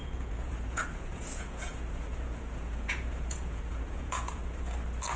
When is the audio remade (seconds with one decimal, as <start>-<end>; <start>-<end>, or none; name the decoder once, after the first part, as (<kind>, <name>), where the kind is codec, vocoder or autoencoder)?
0.0-4.4 (vocoder, Vocos)